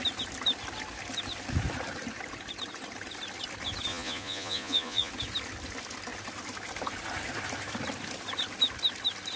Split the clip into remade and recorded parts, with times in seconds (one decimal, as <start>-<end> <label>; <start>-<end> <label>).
0.0-3.9 recorded; 3.9-5.1 remade; 5.1-9.4 recorded